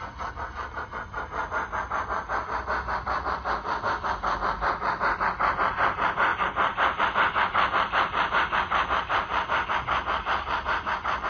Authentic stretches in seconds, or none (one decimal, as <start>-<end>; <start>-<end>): 0.0-11.3